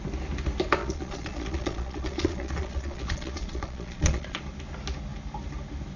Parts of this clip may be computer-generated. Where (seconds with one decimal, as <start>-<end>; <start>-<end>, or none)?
0.8-4.4